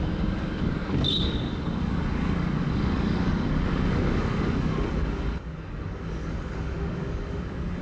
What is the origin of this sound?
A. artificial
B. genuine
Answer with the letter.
A